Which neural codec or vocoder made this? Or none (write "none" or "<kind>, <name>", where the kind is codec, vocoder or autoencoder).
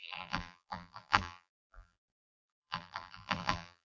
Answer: vocoder, BigVGAN v2